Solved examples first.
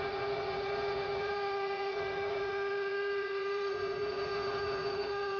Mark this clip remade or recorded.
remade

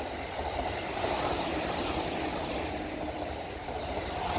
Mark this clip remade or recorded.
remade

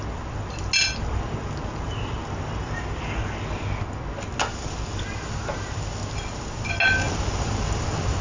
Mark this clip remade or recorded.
recorded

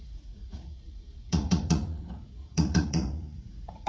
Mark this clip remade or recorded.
remade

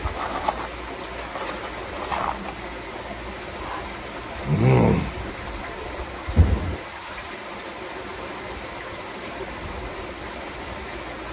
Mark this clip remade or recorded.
recorded